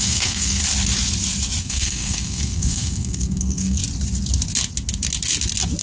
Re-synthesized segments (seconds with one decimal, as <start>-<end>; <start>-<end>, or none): 0.0-0.6; 1.6-3.8